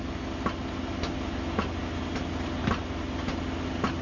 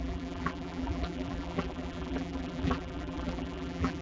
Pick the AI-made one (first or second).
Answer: second